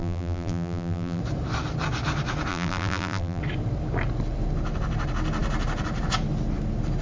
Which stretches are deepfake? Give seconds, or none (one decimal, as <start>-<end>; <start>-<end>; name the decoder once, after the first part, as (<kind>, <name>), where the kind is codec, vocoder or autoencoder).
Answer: 0.0-1.2 (vocoder, BigVGAN v2); 2.5-3.4